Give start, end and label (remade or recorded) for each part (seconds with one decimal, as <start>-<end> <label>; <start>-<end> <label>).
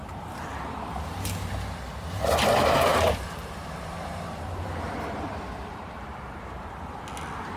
0.0-1.5 remade; 1.5-2.9 recorded; 2.9-5.2 remade; 5.2-5.7 recorded; 5.7-6.7 remade; 6.7-7.6 recorded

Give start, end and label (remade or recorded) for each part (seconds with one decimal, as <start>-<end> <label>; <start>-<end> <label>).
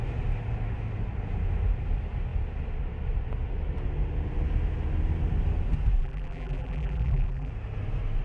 0.0-6.0 recorded; 6.0-7.5 remade; 7.5-8.2 recorded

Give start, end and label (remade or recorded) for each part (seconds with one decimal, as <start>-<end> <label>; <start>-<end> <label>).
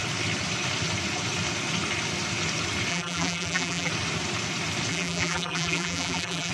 0.0-2.9 recorded; 2.9-3.9 remade; 3.9-4.9 recorded; 4.9-6.5 remade